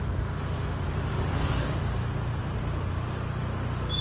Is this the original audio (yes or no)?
yes